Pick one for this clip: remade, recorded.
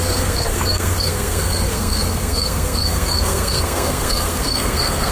remade